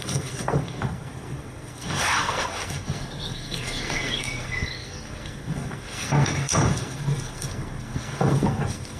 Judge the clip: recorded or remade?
remade